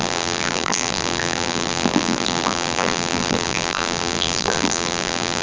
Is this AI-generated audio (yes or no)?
yes